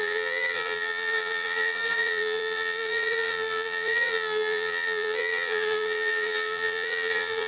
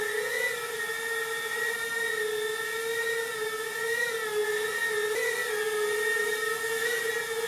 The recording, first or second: second